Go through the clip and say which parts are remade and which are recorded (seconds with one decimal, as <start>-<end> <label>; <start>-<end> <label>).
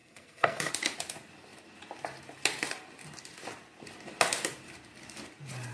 0.0-0.7 remade; 0.7-5.7 recorded